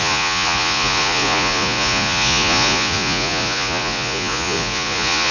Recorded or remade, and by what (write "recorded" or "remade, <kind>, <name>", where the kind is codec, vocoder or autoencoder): remade, vocoder, Vocos